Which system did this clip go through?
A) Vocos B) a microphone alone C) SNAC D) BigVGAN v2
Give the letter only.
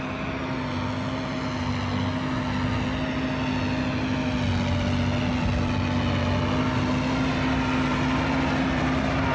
B